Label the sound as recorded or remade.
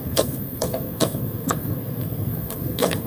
remade